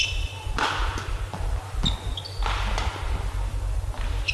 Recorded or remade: recorded